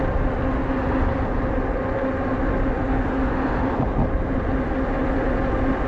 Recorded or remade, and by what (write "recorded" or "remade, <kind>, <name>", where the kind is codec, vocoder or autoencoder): recorded